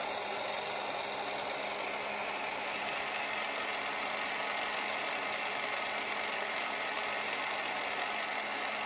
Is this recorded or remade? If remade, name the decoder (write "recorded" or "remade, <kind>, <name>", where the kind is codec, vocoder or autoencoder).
recorded